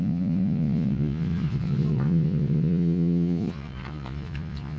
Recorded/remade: remade